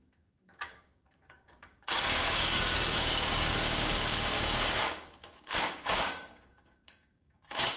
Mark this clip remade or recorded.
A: remade